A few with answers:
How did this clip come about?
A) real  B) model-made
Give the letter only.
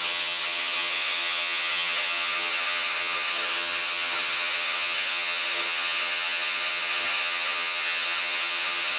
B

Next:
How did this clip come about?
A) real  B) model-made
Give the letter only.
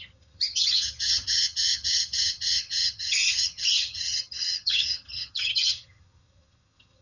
B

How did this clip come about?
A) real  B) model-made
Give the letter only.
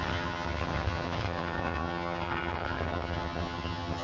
B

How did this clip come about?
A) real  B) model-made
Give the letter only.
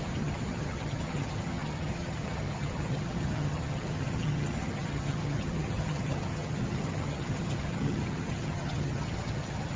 B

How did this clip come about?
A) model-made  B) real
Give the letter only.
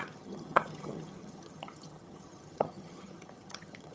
A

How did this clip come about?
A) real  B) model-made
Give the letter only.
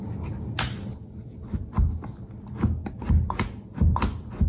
A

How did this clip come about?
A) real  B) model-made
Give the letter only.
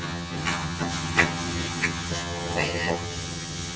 B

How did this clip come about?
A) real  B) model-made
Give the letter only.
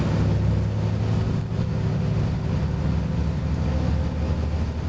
A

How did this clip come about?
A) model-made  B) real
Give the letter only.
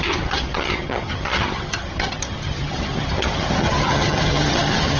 A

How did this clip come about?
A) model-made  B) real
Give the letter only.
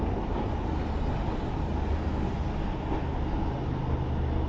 B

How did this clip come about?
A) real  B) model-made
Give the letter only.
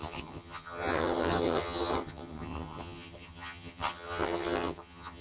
B